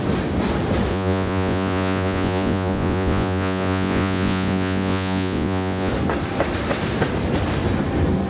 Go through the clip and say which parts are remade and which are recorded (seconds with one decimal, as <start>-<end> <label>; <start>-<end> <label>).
0.0-0.9 recorded; 0.9-5.9 remade; 5.9-8.3 recorded